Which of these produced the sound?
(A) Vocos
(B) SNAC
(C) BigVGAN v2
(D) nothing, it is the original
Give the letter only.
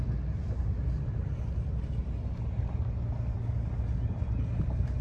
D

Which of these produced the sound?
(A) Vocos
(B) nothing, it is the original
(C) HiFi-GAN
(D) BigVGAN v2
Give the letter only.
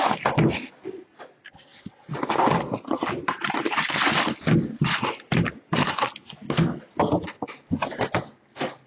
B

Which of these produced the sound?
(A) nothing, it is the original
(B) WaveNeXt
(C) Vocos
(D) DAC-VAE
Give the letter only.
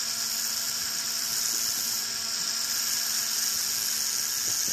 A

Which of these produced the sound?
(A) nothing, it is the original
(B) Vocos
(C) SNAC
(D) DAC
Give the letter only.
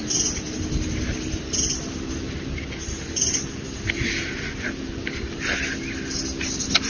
A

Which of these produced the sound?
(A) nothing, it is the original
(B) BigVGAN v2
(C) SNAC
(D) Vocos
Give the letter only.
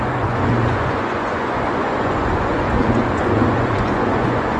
D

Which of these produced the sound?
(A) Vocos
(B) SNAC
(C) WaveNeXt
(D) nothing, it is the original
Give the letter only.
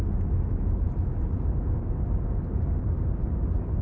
D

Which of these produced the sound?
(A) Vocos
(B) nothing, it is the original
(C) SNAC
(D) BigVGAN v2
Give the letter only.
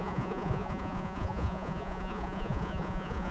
A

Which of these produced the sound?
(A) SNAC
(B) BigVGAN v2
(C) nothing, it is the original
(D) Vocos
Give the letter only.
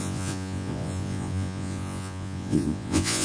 D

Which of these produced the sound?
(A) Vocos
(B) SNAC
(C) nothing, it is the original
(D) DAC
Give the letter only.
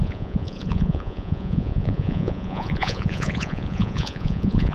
A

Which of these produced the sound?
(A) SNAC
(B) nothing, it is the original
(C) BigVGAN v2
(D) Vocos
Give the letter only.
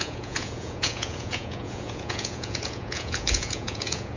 D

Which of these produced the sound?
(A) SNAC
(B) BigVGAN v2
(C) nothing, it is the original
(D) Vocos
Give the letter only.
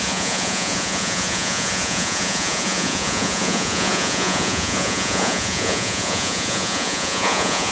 D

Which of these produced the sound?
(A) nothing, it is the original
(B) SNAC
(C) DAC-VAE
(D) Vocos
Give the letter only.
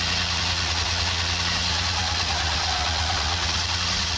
D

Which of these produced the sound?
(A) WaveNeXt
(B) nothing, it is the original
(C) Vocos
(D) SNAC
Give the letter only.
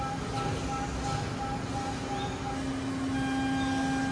B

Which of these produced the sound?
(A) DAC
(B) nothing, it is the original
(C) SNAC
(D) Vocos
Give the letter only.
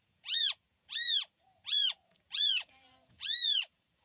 D